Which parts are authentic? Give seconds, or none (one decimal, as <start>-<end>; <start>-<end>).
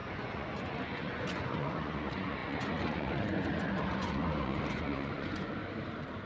5.6-6.3